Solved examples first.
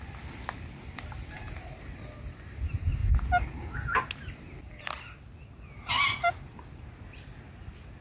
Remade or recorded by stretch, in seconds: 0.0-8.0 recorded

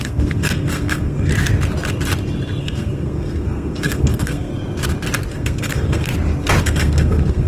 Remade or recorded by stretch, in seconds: 0.0-1.3 remade; 1.3-2.6 recorded; 2.6-4.5 remade; 4.5-5.3 recorded; 5.3-6.1 remade; 6.1-6.6 recorded; 6.6-7.5 remade

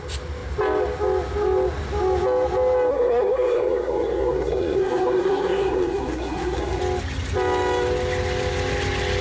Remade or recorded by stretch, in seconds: 0.0-2.9 recorded; 2.9-6.8 remade; 6.8-9.2 recorded

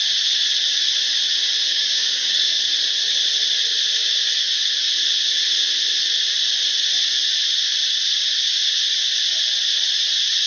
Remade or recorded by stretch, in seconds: 0.0-1.7 recorded; 1.7-2.6 remade; 2.6-10.5 recorded

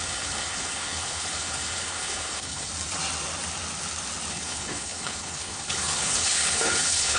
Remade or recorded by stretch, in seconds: 0.0-2.7 remade; 2.7-4.3 recorded; 4.3-7.2 remade

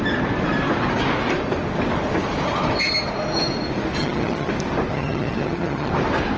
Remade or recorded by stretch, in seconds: 0.0-4.0 recorded; 4.0-4.5 remade; 4.5-4.9 recorded; 4.9-5.9 remade; 5.9-6.4 recorded

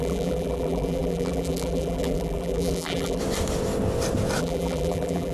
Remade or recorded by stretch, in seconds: 0.0-3.2 remade; 3.2-4.4 recorded; 4.4-5.3 remade